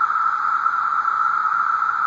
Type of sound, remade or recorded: recorded